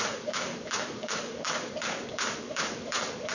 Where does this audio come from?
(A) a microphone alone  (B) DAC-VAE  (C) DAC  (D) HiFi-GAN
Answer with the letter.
C